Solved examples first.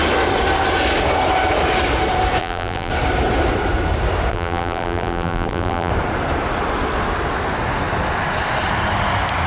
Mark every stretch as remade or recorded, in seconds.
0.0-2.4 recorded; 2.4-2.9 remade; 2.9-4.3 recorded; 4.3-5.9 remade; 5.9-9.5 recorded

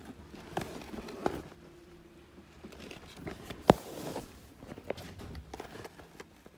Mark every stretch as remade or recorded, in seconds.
0.0-1.2 recorded; 1.2-5.2 remade; 5.2-6.6 recorded